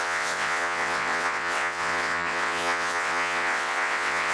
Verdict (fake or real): fake